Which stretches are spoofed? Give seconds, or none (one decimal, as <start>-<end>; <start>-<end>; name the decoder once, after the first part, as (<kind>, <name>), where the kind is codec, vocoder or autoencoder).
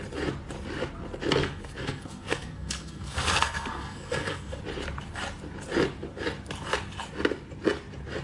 1.4-4.6 (codec, SNAC)